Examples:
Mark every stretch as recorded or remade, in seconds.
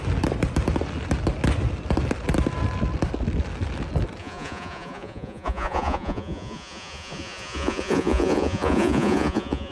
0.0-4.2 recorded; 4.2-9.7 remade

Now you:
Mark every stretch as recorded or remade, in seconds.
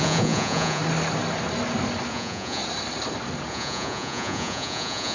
0.0-0.8 remade; 0.8-2.1 recorded; 2.1-2.6 remade; 2.6-3.5 recorded; 3.5-5.1 remade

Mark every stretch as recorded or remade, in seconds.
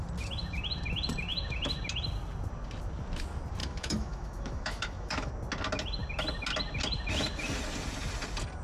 0.0-3.6 recorded; 3.6-5.3 remade; 5.3-8.6 recorded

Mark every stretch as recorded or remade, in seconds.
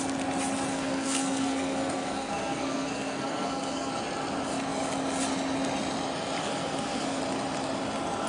0.0-0.7 recorded; 0.7-3.9 remade; 3.9-6.4 recorded; 6.4-7.2 remade; 7.2-8.3 recorded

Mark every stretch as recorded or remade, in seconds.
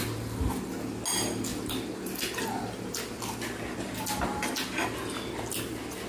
0.0-1.5 recorded; 1.5-4.5 remade; 4.5-6.1 recorded